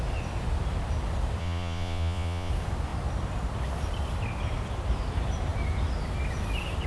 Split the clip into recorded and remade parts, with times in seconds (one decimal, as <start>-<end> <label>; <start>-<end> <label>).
0.0-1.4 recorded; 1.4-2.5 remade; 2.5-6.9 recorded